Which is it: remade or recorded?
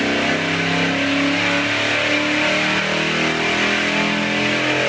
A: recorded